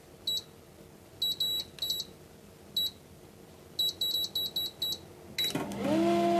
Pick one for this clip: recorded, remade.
recorded